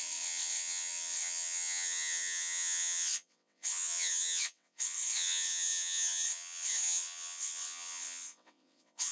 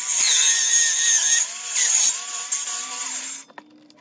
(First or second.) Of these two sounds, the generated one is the first